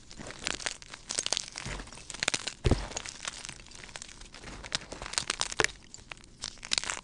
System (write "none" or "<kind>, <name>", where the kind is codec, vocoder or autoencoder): none